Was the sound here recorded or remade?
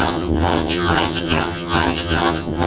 remade